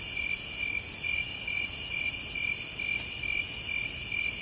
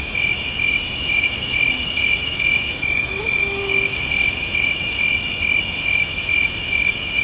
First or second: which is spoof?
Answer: second